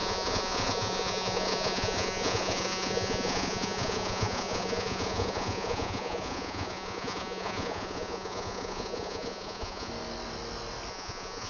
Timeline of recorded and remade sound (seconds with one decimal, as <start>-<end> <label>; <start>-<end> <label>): 0.0-9.9 remade; 9.9-10.9 recorded; 10.9-11.5 remade